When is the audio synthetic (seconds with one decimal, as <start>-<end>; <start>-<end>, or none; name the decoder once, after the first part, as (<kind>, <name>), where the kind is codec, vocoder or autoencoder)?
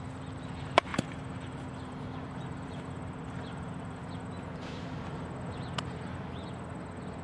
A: 0.9-4.0 (vocoder, BigVGAN v2)